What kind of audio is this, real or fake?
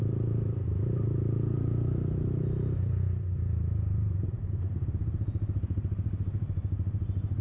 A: fake